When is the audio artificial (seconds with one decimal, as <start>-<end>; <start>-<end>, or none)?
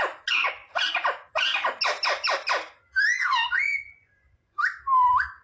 3.3-4.6